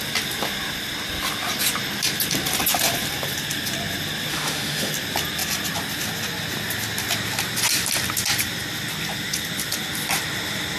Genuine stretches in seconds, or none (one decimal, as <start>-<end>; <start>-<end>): 0.0-4.3; 4.9-10.8